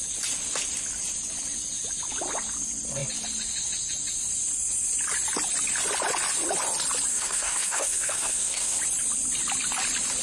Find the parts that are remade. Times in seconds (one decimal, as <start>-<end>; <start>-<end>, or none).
7.1-8.8